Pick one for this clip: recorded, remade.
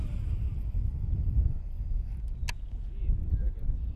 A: recorded